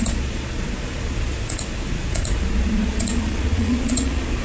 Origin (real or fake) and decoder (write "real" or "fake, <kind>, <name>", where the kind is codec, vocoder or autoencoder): fake, vocoder, Vocos